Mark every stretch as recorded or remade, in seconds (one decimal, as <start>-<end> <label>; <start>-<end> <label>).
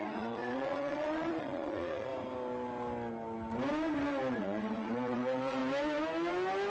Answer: 0.0-2.1 remade; 2.1-4.4 recorded; 4.4-5.6 remade; 5.6-6.7 recorded